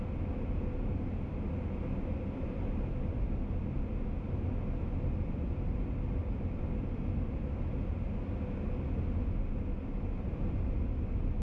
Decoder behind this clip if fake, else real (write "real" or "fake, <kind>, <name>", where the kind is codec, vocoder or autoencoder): real